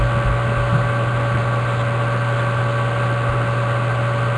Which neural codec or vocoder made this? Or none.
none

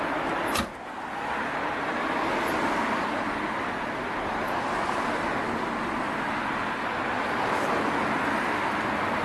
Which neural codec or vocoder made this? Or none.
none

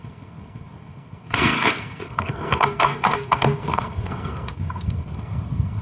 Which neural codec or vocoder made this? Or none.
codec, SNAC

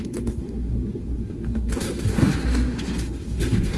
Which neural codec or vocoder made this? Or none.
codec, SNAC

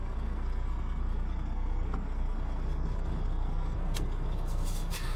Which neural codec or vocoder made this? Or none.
codec, SNAC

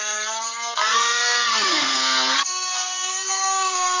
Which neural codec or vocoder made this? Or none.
codec, SNAC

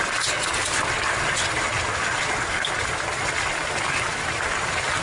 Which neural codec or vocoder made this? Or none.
none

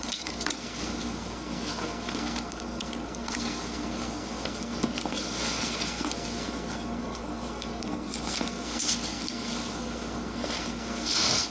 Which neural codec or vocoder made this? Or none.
codec, SNAC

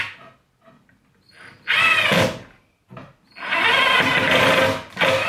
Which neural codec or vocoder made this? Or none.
none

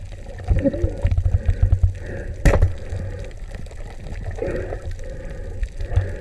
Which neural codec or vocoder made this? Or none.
none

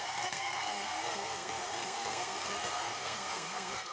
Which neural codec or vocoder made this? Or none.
codec, SNAC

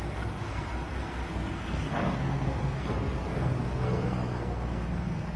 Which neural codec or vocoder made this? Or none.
codec, SNAC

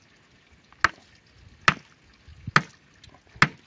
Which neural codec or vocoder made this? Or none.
none